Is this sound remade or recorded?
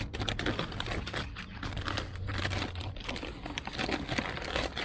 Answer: recorded